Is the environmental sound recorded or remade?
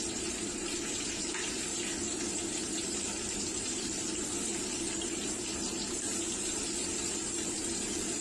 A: remade